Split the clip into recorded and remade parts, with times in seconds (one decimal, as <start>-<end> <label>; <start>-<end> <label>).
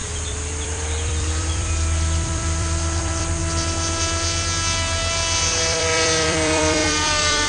0.0-3.4 remade; 3.4-5.6 recorded; 5.6-7.5 remade